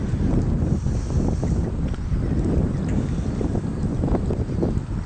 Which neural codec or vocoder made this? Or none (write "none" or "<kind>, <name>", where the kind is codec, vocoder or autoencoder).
none